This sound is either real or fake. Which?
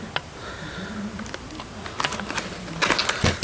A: real